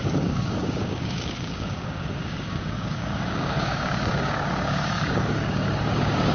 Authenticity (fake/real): fake